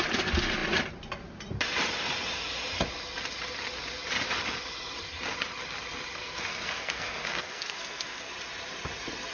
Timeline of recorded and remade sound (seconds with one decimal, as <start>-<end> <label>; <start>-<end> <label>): 0.0-6.2 recorded; 6.2-8.3 remade; 8.3-9.3 recorded